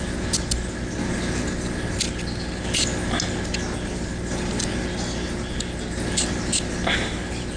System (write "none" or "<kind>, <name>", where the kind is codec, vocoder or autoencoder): none